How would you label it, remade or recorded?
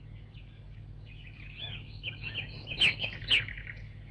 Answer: remade